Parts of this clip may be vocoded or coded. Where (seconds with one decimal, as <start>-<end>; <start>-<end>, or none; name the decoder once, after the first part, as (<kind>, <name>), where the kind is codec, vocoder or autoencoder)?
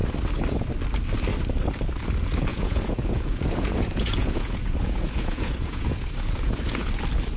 2.5-6.9 (vocoder, Vocos)